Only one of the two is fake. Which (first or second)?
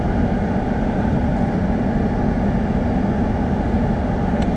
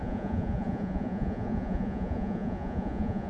second